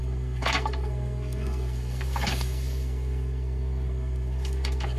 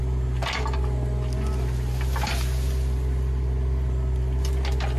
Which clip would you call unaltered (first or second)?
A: second